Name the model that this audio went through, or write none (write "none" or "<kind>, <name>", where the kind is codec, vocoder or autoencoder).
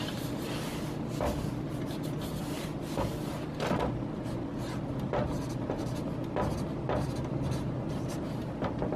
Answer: none